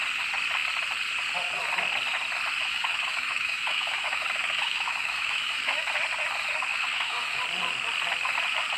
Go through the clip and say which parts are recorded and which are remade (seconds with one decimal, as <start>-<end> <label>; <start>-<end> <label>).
0.0-2.6 recorded; 2.6-5.9 remade; 5.9-6.7 recorded; 6.7-7.4 remade; 7.4-8.8 recorded